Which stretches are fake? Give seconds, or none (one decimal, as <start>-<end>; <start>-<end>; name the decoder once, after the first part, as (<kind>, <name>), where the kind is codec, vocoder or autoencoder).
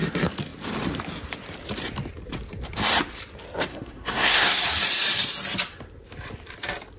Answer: 3.7-4.6 (codec, SNAC)